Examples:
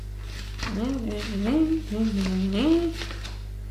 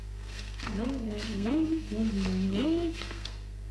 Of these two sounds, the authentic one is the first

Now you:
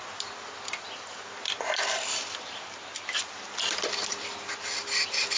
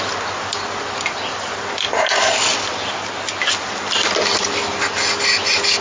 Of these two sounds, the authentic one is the second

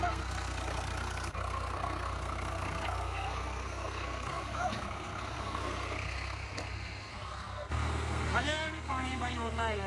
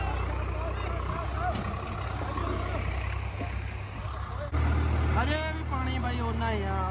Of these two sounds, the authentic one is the second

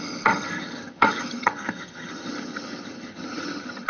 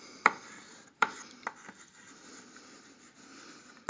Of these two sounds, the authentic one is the second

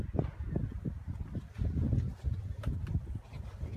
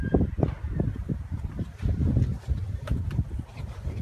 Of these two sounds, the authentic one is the first